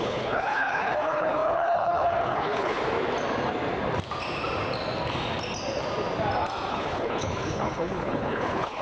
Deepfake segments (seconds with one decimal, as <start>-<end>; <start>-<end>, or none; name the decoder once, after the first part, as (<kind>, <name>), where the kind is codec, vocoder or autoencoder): 0.0-2.8 (codec, HILCodec); 6.7-8.8